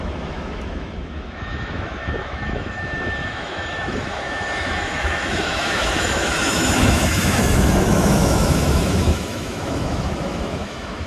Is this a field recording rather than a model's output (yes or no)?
no